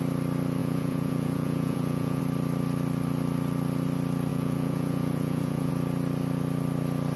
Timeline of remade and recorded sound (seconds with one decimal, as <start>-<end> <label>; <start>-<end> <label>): 0.0-0.6 recorded; 0.6-2.2 remade; 2.2-4.3 recorded; 4.3-5.7 remade; 5.7-7.2 recorded